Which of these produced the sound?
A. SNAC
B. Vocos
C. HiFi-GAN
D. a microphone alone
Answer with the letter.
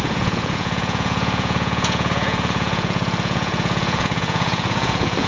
B